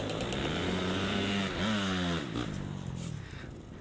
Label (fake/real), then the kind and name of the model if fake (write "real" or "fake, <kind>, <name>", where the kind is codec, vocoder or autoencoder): real